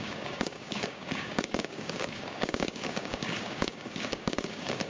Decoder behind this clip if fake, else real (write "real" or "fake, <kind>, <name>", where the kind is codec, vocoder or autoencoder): fake, codec, DAC